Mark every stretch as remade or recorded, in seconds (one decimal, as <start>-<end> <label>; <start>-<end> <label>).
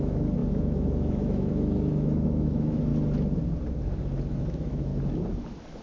0.0-2.9 remade; 2.9-4.4 recorded; 4.4-4.9 remade; 4.9-5.8 recorded